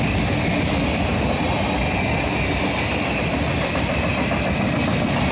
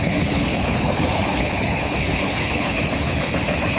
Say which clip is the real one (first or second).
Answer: first